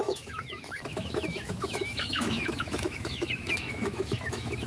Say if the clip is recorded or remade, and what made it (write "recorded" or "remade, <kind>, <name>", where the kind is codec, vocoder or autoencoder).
remade, autoencoder, DAC-VAE